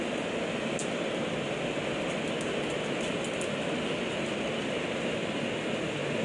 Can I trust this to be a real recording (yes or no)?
yes